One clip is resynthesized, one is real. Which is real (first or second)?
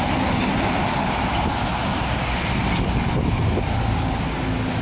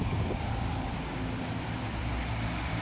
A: first